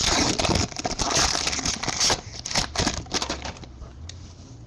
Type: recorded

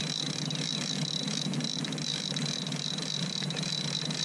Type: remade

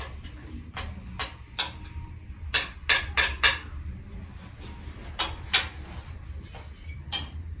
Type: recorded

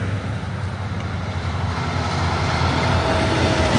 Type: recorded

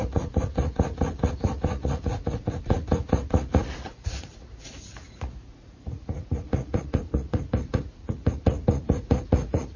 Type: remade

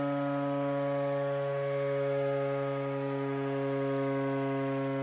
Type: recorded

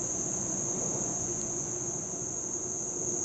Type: remade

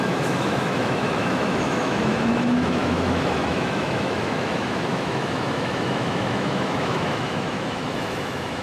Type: remade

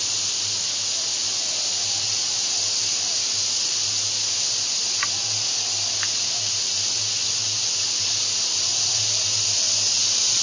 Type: recorded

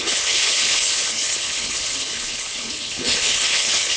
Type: remade